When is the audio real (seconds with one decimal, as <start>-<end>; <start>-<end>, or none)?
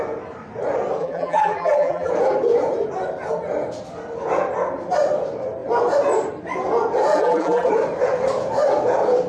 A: 0.0-1.0; 2.1-7.1; 7.7-9.3